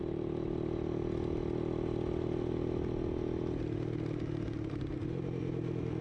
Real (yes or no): yes